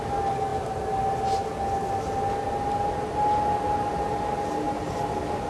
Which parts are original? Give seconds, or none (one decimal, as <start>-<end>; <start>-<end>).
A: 0.0-5.5